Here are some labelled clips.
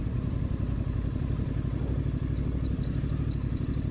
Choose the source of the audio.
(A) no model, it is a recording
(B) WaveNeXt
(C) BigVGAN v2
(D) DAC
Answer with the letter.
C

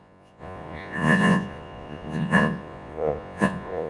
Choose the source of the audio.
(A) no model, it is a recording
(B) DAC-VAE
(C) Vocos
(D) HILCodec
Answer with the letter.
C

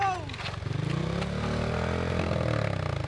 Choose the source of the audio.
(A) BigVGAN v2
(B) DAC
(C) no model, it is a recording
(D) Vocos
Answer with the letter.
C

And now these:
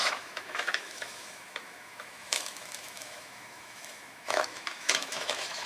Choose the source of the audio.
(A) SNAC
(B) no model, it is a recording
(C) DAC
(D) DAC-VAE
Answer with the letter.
D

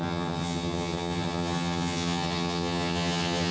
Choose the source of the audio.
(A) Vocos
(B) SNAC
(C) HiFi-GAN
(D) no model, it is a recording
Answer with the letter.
C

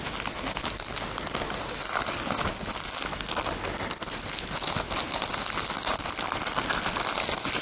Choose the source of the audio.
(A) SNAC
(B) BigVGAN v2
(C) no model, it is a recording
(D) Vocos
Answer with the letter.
C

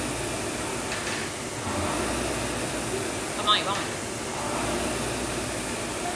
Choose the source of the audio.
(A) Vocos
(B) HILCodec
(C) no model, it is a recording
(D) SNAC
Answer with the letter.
C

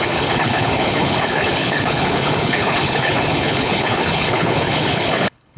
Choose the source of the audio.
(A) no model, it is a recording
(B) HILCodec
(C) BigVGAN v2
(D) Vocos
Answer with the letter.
B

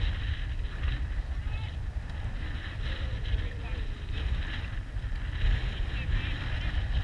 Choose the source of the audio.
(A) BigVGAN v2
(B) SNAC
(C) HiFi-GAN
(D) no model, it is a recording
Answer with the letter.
D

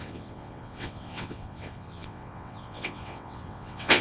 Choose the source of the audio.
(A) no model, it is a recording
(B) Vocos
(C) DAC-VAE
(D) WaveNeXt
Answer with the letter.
D